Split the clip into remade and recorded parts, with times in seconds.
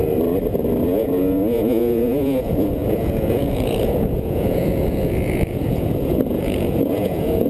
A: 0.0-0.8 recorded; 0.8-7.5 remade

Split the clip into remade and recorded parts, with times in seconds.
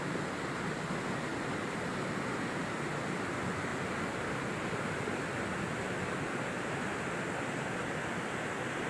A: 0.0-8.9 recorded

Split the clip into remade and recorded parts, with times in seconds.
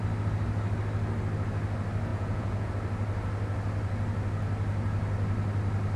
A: 0.0-2.1 recorded; 2.1-2.7 remade; 2.7-6.0 recorded